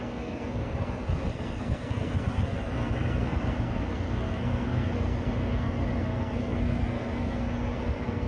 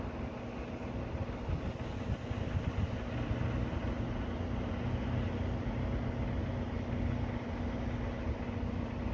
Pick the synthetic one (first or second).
first